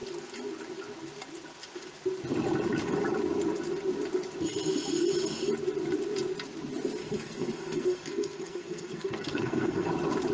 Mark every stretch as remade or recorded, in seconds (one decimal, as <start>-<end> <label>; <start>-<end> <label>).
0.0-7.0 recorded; 7.0-9.9 remade; 9.9-10.3 recorded